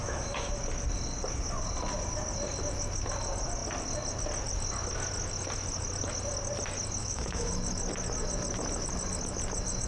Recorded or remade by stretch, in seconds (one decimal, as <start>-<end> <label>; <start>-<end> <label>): 0.0-0.5 remade; 0.5-7.0 recorded; 7.0-7.5 remade; 7.5-9.9 recorded